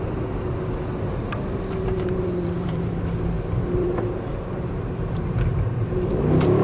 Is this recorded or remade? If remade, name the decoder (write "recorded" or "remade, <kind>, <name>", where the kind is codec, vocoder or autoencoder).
remade, vocoder, BigVGAN v2